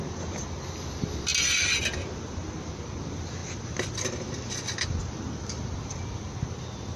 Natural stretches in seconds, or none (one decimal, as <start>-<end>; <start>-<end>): 0.0-7.0